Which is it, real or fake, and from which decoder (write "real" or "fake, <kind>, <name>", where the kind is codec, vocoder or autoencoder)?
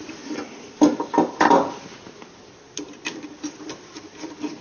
real